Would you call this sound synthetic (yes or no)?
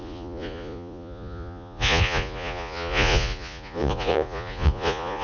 yes